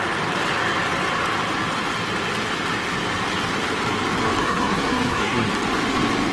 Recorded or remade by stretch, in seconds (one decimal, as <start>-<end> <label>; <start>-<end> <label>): 0.0-4.4 recorded; 4.4-5.5 remade; 5.5-6.3 recorded